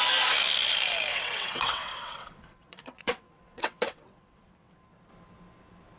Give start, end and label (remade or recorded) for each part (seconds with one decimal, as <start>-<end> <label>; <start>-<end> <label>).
0.0-1.1 recorded; 1.1-4.7 remade; 4.7-6.0 recorded